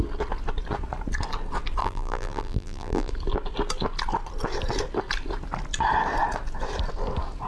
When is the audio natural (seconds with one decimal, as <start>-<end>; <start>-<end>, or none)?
0.0-1.8; 3.1-7.5